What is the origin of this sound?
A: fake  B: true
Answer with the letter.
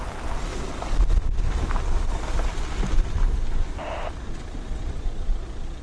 B